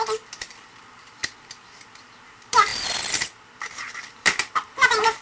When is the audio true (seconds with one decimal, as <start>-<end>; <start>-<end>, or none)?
1.2-1.8; 2.7-4.0